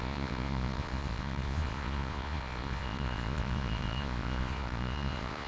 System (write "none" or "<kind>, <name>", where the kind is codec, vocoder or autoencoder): vocoder, Vocos